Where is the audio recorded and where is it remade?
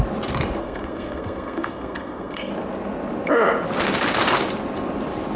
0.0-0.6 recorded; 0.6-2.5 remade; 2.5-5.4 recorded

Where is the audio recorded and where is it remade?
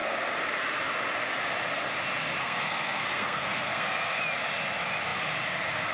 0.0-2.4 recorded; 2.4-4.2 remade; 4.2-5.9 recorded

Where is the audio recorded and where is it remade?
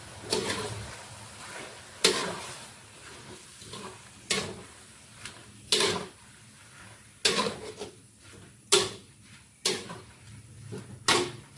0.0-2.2 recorded; 2.2-3.0 remade; 3.0-11.6 recorded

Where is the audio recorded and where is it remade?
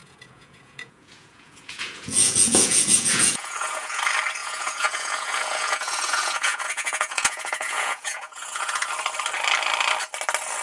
0.0-4.0 remade; 4.0-4.4 recorded; 4.4-8.9 remade; 8.9-10.6 recorded